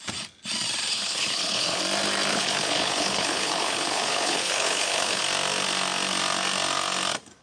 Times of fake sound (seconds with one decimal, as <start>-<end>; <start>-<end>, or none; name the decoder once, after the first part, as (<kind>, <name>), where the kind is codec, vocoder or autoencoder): 0.9-1.8 (codec, HILCodec); 2.3-5.2